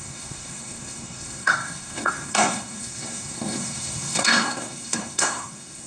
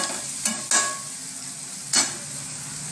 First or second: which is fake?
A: first